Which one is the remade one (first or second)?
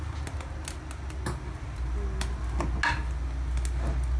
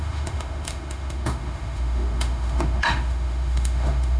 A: second